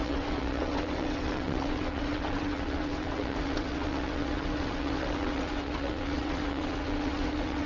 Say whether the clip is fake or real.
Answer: fake